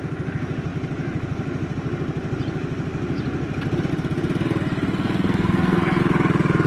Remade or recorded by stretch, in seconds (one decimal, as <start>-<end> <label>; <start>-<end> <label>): 0.0-5.0 recorded; 5.0-6.0 remade; 6.0-6.7 recorded